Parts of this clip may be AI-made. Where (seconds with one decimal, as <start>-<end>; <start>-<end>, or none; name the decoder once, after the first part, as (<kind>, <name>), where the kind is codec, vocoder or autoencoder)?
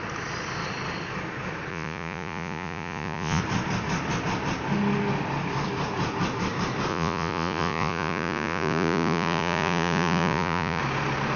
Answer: 1.7-3.4 (vocoder, Vocos); 6.9-10.8